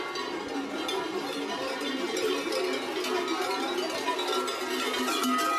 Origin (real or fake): real